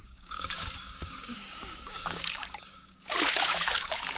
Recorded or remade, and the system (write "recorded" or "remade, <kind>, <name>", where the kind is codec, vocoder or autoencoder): remade, codec, DAC